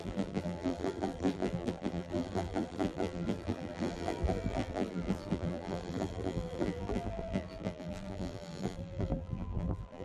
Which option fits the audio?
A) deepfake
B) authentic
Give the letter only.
A